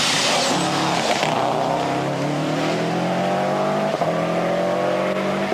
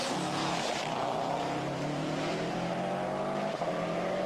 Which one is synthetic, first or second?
second